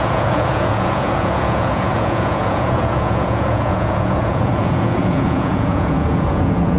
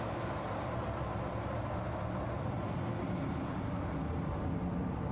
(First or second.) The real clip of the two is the second